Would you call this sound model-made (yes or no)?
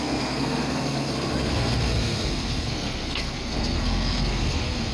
yes